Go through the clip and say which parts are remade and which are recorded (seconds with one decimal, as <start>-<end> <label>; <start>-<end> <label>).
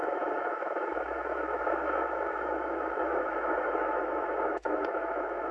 0.0-5.5 remade